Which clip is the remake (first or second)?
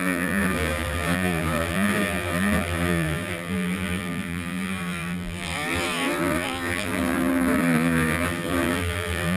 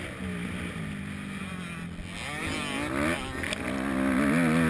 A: first